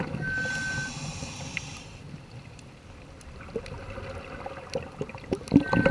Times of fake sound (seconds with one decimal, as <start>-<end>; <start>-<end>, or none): 1.1-3.8